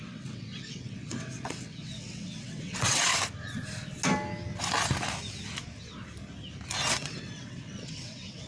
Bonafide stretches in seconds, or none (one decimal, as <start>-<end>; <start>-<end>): 3.1-6.9